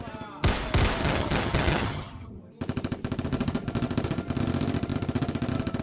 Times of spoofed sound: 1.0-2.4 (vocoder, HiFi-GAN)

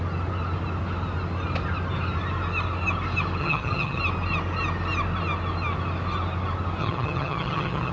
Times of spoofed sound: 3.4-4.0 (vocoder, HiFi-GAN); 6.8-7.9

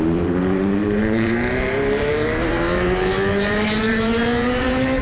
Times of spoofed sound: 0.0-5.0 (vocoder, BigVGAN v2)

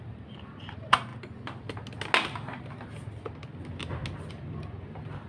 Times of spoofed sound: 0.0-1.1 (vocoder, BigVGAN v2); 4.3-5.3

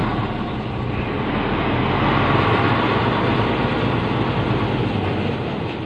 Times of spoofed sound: none

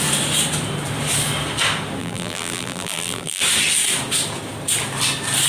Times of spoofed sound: 2.0-3.4 (vocoder, BigVGAN v2)